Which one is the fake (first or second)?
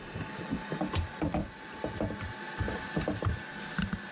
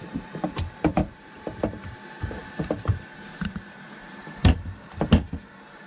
second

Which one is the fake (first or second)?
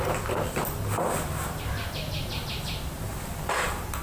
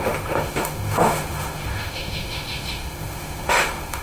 second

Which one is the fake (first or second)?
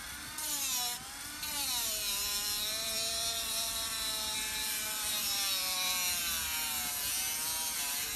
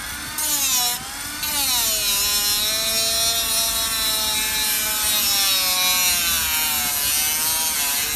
first